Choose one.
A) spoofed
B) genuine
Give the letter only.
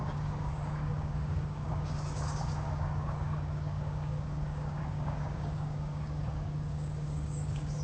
A